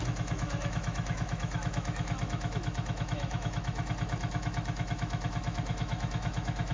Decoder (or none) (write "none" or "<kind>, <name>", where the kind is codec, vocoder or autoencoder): autoencoder, DAC-VAE